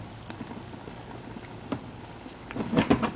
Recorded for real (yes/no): yes